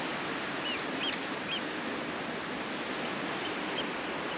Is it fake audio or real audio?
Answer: real